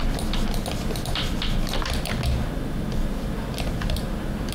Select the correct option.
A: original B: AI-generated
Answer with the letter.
A